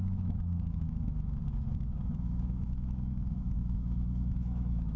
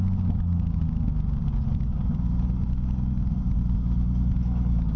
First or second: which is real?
second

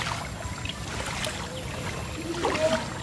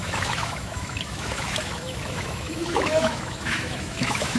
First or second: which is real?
first